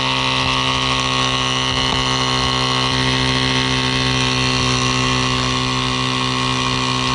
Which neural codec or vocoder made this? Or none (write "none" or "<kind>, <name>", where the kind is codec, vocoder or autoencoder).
none